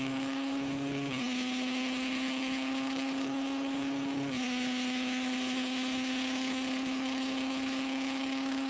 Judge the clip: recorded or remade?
remade